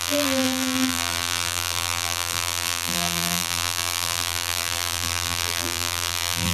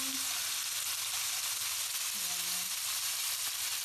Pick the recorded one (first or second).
second